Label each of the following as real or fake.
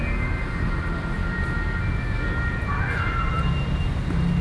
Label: real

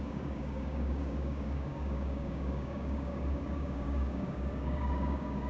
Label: fake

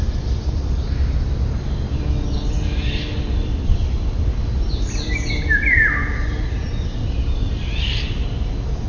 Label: real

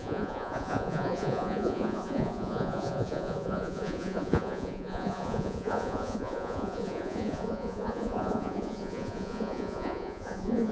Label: fake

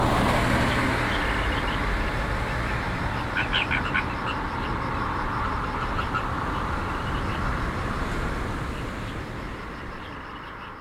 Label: real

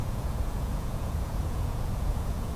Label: fake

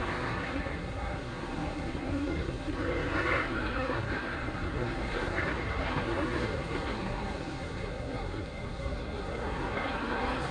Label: fake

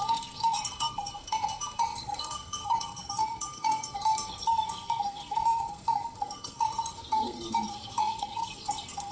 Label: fake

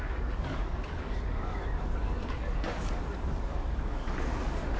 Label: fake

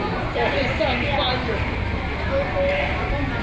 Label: real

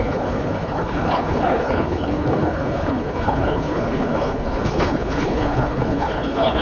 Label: fake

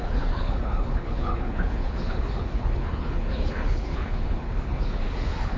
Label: fake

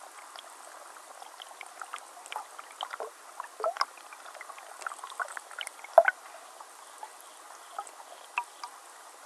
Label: real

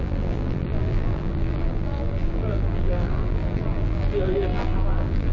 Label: fake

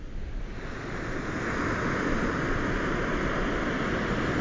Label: real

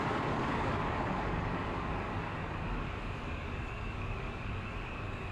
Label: fake